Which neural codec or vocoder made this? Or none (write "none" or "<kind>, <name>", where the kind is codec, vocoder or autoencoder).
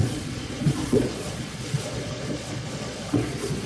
vocoder, Vocos